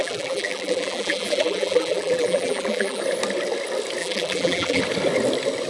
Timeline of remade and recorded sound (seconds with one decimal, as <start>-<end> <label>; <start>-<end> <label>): 0.0-3.0 remade; 3.0-4.0 recorded; 4.0-4.8 remade; 4.8-5.7 recorded